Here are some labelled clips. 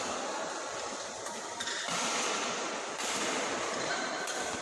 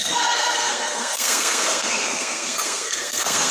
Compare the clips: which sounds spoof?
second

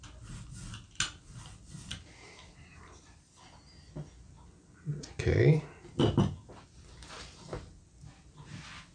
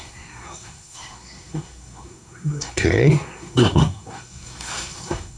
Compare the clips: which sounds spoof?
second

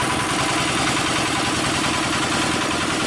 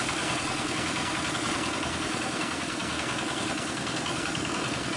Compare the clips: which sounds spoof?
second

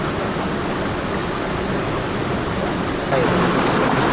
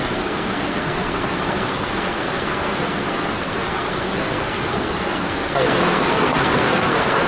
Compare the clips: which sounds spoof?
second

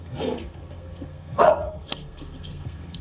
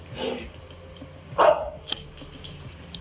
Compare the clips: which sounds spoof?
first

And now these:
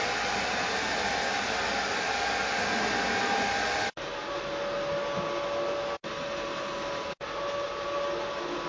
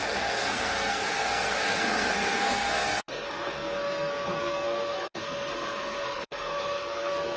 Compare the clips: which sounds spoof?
second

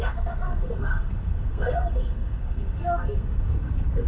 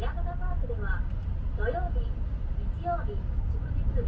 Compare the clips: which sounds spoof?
first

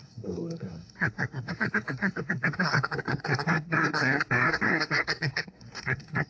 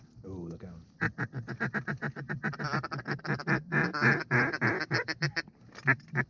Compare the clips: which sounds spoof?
first